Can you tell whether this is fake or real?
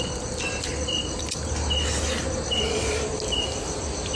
real